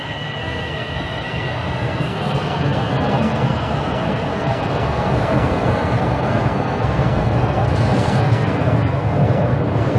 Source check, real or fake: fake